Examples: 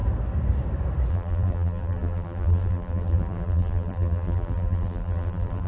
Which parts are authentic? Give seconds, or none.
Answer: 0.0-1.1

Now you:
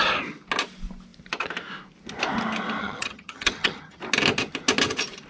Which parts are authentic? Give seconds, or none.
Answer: 0.0-2.8; 4.0-5.3

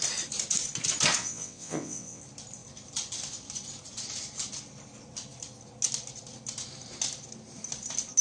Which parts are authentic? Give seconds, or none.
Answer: 0.0-1.2; 2.2-8.2

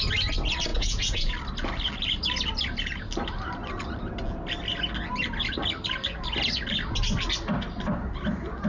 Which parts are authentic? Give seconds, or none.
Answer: 0.0-0.7; 1.3-8.7

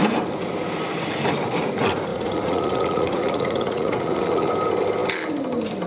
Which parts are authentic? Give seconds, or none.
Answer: 0.0-2.1; 4.5-5.9

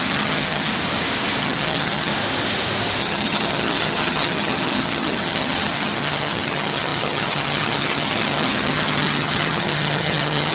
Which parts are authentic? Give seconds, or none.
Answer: 0.7-1.4; 2.1-3.0

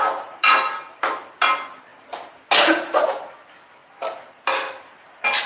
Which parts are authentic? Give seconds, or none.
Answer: 0.0-5.5

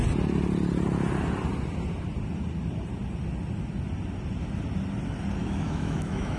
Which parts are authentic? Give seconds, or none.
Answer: 0.0-5.4